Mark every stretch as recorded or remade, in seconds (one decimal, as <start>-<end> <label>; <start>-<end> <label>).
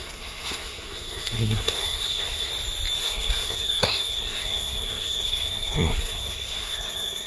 0.0-2.5 remade; 2.5-3.0 recorded; 3.0-7.3 remade